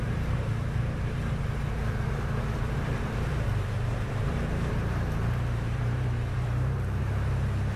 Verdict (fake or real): fake